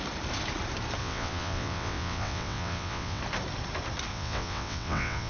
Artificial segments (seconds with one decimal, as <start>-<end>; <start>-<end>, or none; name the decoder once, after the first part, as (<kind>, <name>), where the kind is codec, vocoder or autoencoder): 1.0-3.2 (vocoder, WaveNeXt); 4.1-5.3

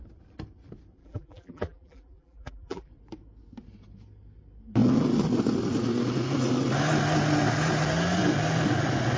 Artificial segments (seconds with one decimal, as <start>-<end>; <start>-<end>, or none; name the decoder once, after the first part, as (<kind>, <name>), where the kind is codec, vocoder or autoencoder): 1.0-2.9 (vocoder, BigVGAN v2)

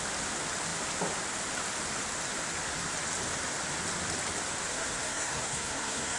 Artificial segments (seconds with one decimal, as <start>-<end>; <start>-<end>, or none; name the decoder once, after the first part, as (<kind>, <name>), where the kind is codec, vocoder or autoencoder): 4.7-6.2 (codec, SNAC)

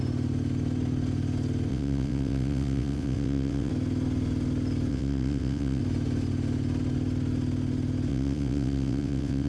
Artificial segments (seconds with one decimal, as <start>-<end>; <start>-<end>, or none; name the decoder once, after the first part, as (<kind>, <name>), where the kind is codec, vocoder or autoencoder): 1.7-3.7 (vocoder, WaveNeXt); 4.9-5.8; 8.1-9.5

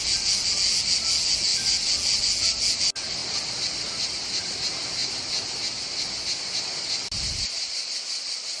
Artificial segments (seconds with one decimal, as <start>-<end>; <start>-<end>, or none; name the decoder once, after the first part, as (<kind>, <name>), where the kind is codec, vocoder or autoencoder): none

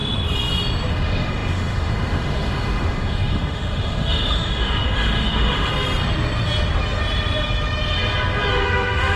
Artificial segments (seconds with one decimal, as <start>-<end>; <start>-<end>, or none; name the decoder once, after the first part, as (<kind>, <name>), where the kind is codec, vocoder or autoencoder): 0.9-5.7 (autoencoder, DAC-VAE); 8.5-9.2

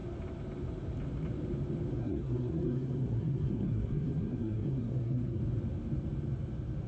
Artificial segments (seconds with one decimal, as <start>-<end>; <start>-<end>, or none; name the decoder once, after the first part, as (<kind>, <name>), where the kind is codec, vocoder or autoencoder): 1.9-5.4 (codec, SNAC)